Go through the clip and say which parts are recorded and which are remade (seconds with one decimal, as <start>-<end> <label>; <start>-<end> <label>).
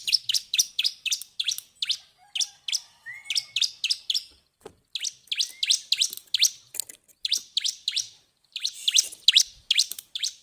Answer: 0.0-7.1 recorded; 7.1-10.4 remade